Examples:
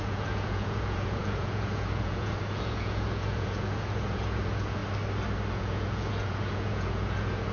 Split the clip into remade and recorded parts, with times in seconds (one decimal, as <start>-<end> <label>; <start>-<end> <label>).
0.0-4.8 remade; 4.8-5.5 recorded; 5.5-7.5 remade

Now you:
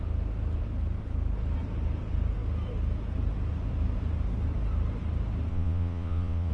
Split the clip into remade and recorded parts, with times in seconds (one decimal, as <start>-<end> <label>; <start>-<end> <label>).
0.0-5.5 recorded; 5.5-6.5 remade

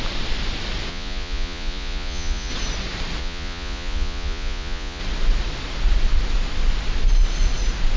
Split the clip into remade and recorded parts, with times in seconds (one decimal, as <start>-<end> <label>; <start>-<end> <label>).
0.0-0.9 recorded; 0.9-2.5 remade; 2.5-3.2 recorded; 3.2-5.0 remade; 5.0-8.0 recorded

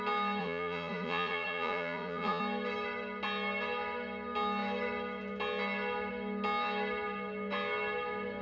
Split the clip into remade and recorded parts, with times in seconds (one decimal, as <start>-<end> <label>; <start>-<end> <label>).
0.0-0.4 recorded; 0.4-2.4 remade; 2.4-8.4 recorded

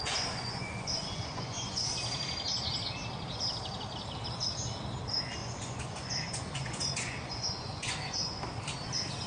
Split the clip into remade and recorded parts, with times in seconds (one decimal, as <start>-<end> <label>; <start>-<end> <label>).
0.0-1.9 remade; 1.9-5.4 recorded; 5.4-8.4 remade; 8.4-9.3 recorded